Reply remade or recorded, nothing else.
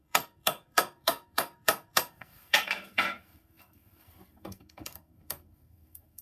remade